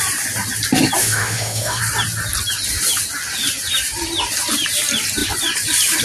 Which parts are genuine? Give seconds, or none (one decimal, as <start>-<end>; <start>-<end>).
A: 0.0-1.0; 1.8-6.0